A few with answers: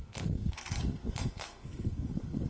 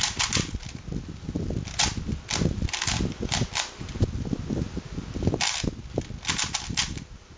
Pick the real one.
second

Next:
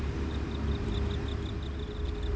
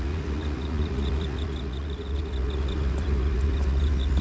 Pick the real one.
first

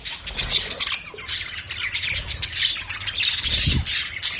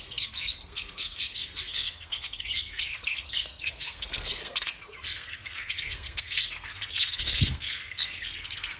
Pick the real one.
first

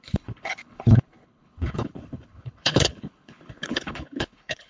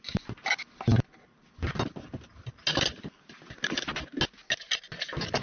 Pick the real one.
second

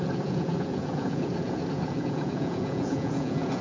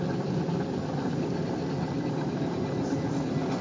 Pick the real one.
second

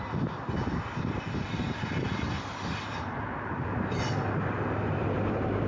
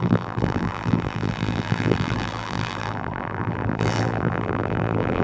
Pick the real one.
first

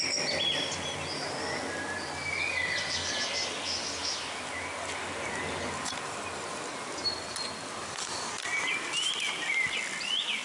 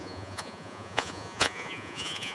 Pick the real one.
first